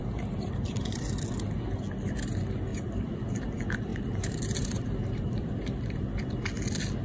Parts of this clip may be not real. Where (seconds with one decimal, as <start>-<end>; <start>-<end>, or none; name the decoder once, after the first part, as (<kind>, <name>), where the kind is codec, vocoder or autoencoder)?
0.0-1.0 (vocoder, BigVGAN v2); 2.7-3.4; 3.9-6.0